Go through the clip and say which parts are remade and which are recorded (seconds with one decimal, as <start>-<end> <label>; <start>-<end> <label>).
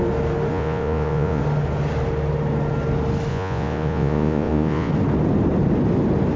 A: 0.0-0.5 recorded; 0.5-1.4 remade; 1.4-3.3 recorded; 3.3-4.9 remade; 4.9-6.4 recorded